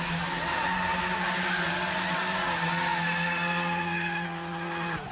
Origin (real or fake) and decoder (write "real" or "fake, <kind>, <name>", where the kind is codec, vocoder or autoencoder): real